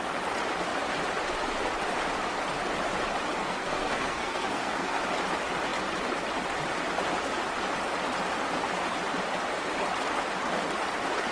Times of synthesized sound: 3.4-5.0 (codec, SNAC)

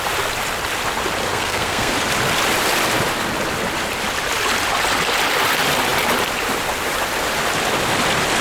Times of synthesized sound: 1.3-1.9 (codec, SNAC)

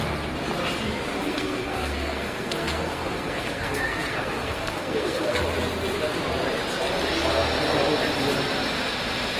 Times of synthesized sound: 1.2-5.4 (codec, SNAC)

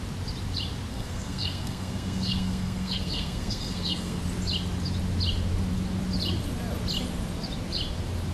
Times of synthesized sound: 0.9-4.2 (codec, SNAC)

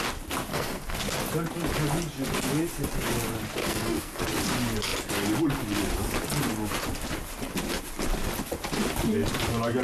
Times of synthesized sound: 0.5-1.0 (codec, SNAC); 3.6-4.2

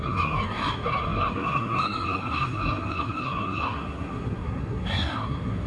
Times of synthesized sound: 0.0-5.7 (codec, SNAC)

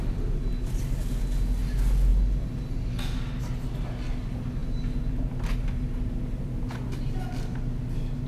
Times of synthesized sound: none

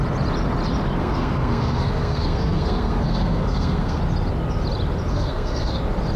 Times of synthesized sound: 1.0-4.0 (codec, SNAC); 5.1-5.8